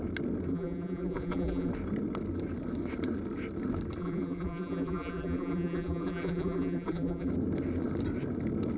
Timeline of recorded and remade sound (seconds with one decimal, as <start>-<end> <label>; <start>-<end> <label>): 0.0-0.5 recorded; 0.5-1.7 remade; 1.7-4.0 recorded; 4.0-7.3 remade; 7.3-8.8 recorded